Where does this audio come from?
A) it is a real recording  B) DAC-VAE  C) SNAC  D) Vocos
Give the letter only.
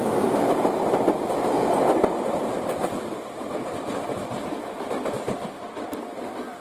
A